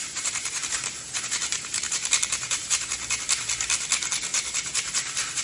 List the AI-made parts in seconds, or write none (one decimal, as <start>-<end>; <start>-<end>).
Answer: 0.0-3.2; 4.3-5.4